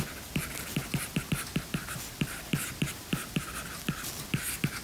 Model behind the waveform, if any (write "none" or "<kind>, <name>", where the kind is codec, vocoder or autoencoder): none